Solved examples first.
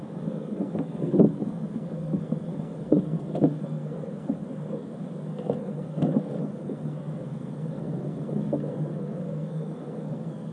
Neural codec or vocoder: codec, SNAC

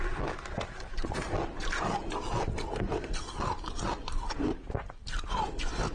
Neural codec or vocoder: none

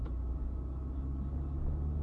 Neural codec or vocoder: none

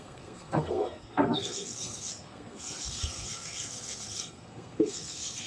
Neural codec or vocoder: codec, SNAC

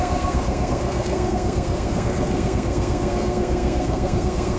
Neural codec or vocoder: codec, SNAC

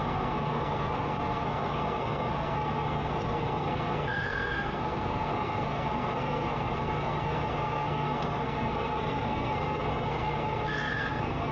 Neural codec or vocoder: codec, SNAC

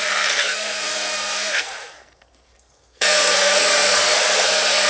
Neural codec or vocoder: codec, SNAC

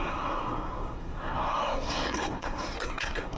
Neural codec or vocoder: codec, SNAC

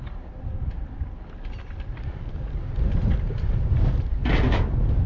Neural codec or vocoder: none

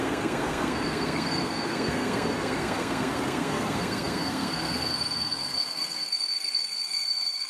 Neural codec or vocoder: codec, SNAC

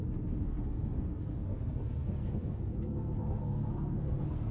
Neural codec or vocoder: codec, SNAC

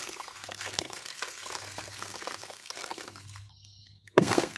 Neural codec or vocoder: codec, SNAC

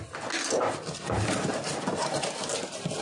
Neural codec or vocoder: none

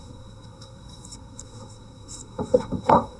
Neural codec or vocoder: codec, SNAC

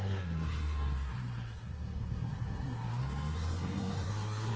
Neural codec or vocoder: codec, SNAC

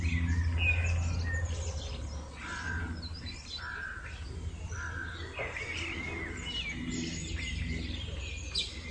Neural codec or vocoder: none